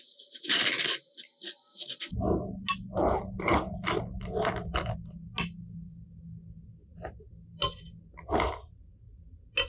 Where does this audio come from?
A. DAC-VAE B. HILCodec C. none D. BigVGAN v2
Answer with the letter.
C